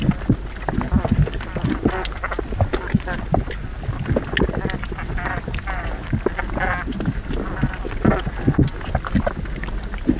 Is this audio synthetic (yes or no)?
no